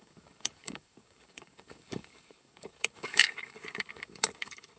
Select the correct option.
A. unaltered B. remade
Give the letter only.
B